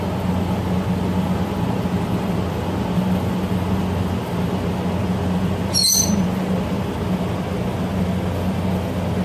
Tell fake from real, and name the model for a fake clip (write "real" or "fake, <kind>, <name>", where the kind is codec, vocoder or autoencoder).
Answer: real